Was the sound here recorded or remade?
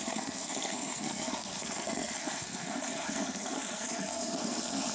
remade